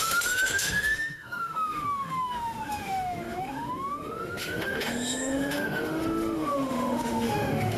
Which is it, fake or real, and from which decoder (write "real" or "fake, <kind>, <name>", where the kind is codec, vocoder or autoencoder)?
fake, autoencoder, DAC-VAE